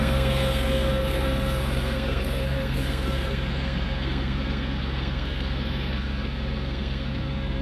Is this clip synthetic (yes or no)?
yes